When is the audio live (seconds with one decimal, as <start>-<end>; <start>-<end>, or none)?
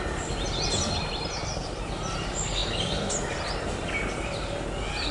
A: 0.0-5.1